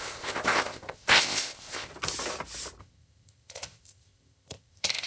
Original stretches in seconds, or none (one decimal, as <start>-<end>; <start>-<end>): 1.9-2.8